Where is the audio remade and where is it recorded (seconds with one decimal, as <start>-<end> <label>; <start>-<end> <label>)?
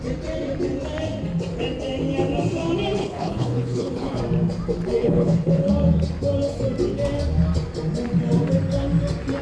0.0-3.0 recorded; 3.0-4.2 remade; 4.2-5.0 recorded; 5.0-5.7 remade; 5.7-9.4 recorded